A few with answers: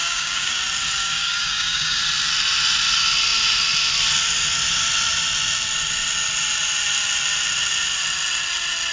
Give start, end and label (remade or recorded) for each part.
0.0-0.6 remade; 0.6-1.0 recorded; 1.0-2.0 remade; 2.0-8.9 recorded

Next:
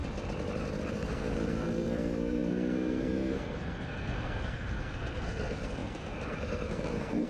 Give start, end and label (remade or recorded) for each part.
0.0-0.9 recorded; 0.9-7.3 remade

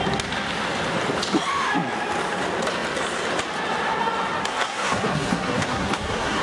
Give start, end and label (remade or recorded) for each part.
0.0-4.4 recorded; 4.4-6.4 remade

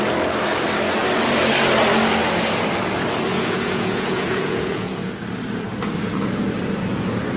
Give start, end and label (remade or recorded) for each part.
0.0-3.3 recorded; 3.3-5.1 remade; 5.1-7.4 recorded